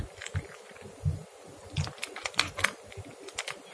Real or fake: real